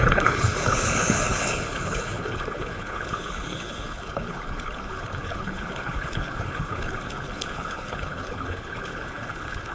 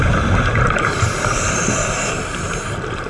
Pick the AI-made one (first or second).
first